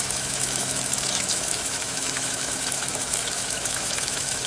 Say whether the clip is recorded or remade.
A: remade